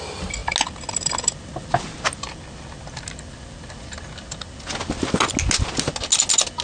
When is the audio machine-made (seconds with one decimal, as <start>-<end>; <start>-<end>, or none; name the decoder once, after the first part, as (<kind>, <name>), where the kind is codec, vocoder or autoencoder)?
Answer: none